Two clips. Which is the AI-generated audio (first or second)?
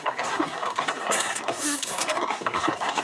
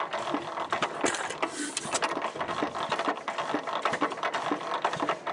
first